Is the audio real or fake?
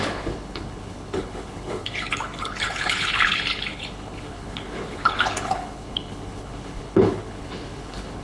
fake